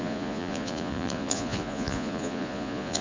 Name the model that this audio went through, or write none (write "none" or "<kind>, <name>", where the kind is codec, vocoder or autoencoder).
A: vocoder, Vocos